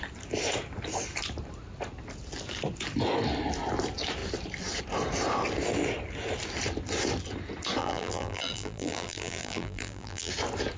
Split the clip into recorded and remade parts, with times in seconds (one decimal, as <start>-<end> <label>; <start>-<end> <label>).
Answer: 0.0-7.8 recorded; 7.8-10.3 remade; 10.3-10.8 recorded